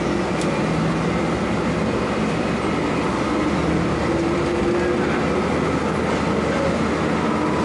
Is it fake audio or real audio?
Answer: real